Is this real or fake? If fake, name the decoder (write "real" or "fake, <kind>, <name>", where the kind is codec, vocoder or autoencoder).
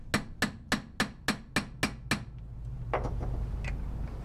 real